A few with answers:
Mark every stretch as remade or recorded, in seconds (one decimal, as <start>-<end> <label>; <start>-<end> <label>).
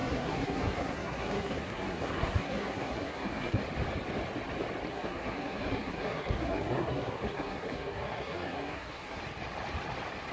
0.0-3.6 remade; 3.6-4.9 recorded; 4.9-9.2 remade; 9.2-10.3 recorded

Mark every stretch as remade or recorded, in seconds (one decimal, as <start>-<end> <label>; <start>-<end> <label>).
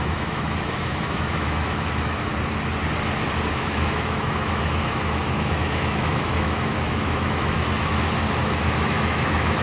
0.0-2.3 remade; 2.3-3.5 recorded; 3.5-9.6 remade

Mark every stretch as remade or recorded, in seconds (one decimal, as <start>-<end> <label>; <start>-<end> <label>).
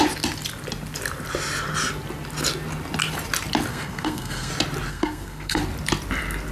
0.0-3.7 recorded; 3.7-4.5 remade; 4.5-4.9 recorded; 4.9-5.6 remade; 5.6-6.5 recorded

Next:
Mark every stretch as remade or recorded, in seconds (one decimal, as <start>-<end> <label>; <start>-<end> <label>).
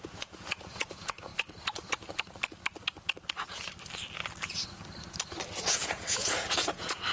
0.0-1.3 remade; 1.3-5.6 recorded; 5.6-7.1 remade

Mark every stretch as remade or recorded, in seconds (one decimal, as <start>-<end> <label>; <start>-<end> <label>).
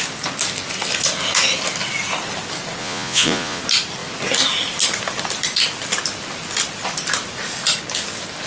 0.0-2.8 recorded; 2.8-3.6 remade; 3.6-8.5 recorded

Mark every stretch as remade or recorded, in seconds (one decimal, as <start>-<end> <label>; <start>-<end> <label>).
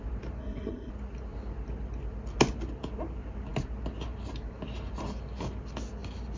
0.0-0.4 recorded; 0.4-0.9 remade; 0.9-6.4 recorded